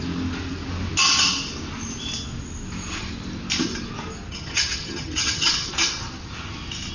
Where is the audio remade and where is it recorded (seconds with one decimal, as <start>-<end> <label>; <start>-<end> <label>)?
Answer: 0.0-4.3 recorded; 4.3-5.5 remade; 5.5-6.9 recorded